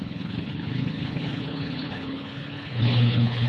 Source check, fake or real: fake